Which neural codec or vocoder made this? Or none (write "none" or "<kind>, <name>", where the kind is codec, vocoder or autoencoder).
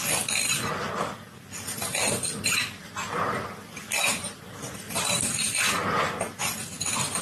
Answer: none